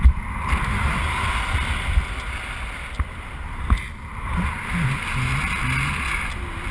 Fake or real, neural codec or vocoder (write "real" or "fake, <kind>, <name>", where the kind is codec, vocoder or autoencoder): real